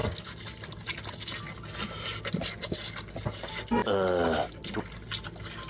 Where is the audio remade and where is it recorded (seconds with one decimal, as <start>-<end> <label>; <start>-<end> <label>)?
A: 0.0-5.7 recorded